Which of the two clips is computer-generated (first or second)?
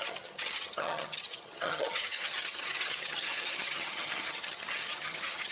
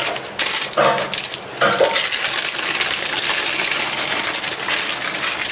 first